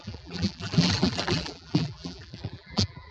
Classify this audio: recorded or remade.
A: remade